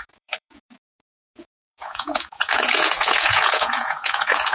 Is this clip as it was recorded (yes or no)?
no